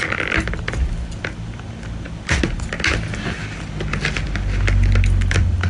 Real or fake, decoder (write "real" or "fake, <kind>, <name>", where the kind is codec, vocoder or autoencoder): real